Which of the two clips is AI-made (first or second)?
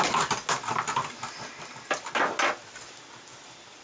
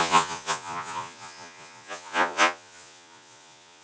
second